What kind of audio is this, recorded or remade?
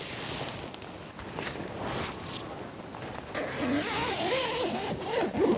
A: recorded